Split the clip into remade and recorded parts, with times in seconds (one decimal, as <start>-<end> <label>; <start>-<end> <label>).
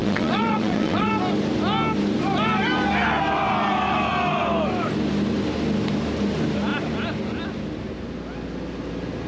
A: 0.0-1.1 remade; 1.1-9.3 recorded